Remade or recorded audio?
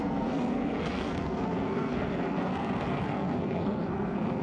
remade